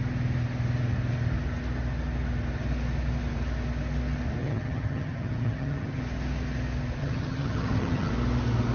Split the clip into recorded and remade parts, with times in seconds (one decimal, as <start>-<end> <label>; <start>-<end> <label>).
0.0-4.4 recorded; 4.4-6.0 remade; 6.0-7.0 recorded; 7.0-8.1 remade; 8.1-8.7 recorded

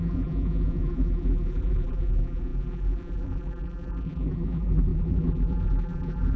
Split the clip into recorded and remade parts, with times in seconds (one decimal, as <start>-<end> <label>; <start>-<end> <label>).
0.0-6.4 remade

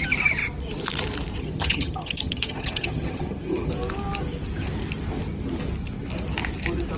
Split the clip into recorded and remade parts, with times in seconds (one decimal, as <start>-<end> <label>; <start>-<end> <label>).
0.0-1.4 recorded; 1.4-3.7 remade; 3.7-7.0 recorded

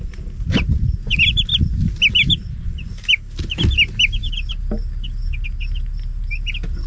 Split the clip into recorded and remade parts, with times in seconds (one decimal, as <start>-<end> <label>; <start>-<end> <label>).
0.0-6.9 recorded

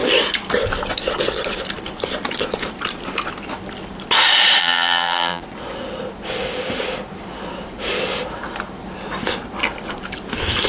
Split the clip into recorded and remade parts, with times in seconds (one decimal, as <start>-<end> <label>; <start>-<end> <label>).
0.0-4.6 recorded; 4.6-5.4 remade; 5.4-10.7 recorded

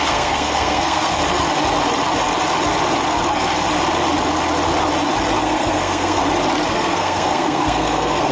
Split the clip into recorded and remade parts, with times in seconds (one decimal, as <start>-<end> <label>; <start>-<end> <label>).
0.0-1.2 remade; 1.2-5.4 recorded; 5.4-6.2 remade; 6.2-6.7 recorded; 6.7-8.3 remade

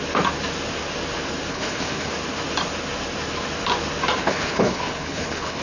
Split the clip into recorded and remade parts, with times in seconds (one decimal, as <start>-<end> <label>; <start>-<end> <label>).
0.0-1.5 recorded; 1.5-2.1 remade; 2.1-4.2 recorded; 4.2-5.6 remade